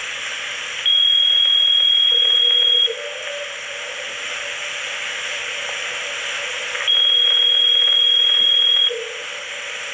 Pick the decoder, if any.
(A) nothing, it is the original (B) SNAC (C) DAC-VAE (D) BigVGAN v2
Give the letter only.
A